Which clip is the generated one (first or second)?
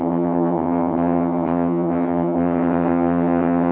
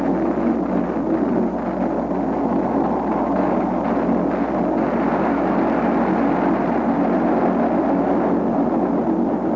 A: first